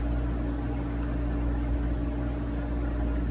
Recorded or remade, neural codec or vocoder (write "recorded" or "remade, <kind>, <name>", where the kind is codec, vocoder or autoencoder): recorded